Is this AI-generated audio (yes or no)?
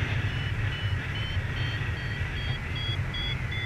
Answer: yes